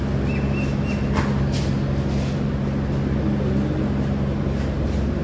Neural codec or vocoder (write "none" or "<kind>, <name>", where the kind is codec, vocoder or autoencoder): none